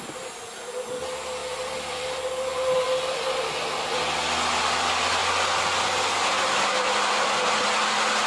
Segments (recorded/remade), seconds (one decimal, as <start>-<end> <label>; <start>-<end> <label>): 0.0-8.3 recorded